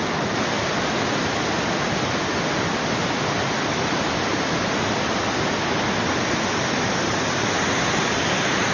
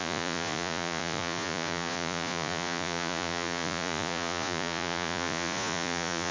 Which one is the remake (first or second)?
second